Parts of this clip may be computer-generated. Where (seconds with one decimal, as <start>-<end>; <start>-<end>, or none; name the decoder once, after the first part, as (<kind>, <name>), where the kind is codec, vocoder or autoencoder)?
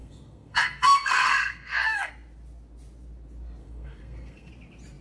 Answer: 0.0-2.1 (codec, SNAC); 3.6-4.5